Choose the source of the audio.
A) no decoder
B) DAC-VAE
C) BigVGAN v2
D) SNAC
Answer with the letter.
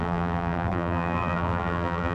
C